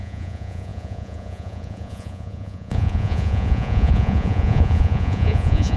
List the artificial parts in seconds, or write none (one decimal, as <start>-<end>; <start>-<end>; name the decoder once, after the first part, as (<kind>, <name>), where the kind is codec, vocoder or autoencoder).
0.0-5.8 (vocoder, Vocos)